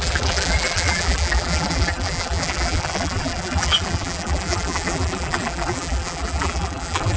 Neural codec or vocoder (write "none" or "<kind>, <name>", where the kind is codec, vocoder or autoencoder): vocoder, BigVGAN v2